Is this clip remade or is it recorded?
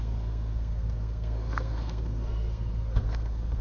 remade